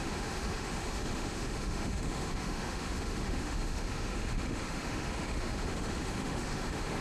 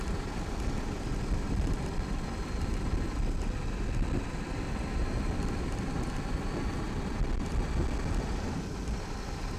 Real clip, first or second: second